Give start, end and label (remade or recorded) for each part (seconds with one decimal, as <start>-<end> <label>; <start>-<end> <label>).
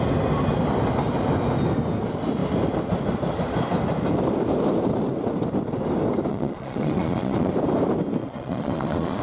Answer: 0.0-6.3 recorded; 6.3-7.5 remade; 7.5-8.2 recorded; 8.2-9.2 remade